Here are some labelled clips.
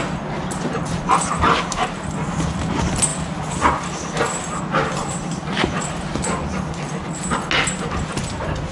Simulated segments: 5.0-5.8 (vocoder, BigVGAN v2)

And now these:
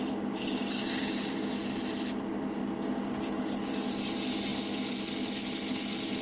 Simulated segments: none

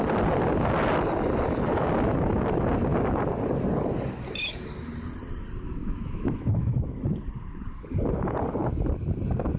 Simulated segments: 5.8-6.8 (autoencoder, DAC-VAE)

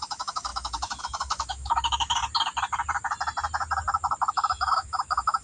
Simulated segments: 0.0-2.2 (autoencoder, DAC-VAE); 4.3-5.4